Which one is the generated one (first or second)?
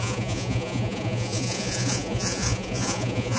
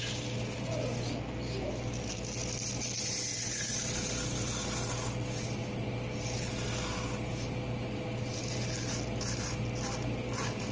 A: first